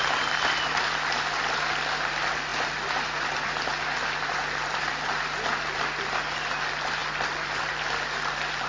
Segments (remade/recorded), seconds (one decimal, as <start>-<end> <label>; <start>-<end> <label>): 0.0-8.7 recorded

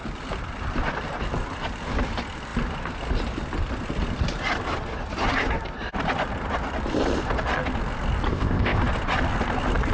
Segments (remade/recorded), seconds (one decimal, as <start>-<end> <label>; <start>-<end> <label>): 0.0-8.3 recorded; 8.3-8.8 remade; 8.8-9.9 recorded

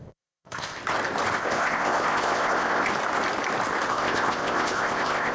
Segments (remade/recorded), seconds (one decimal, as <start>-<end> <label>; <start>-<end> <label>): 0.0-0.8 remade; 0.8-1.4 recorded; 1.4-2.9 remade; 2.9-3.9 recorded; 3.9-5.3 remade

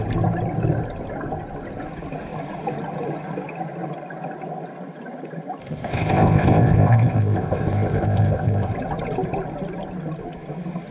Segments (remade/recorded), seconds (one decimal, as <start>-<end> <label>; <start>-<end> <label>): 0.0-5.6 recorded; 5.6-8.7 remade; 8.7-10.9 recorded